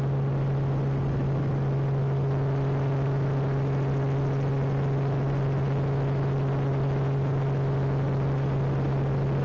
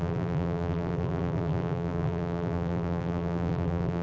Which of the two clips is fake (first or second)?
second